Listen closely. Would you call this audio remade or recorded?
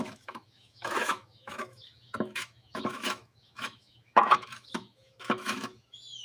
remade